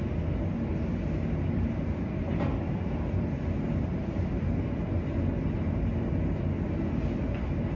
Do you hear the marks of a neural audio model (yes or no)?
no